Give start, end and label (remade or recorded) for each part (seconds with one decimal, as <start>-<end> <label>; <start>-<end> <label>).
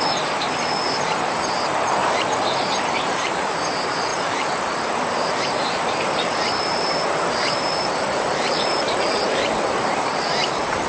0.0-10.9 remade